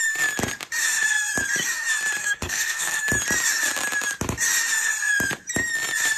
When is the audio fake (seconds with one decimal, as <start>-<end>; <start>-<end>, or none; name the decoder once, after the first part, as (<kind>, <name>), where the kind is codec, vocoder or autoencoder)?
2.2-3.0 (codec, SNAC)